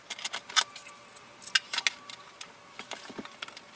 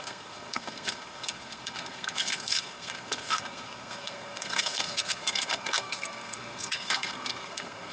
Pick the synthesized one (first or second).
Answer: second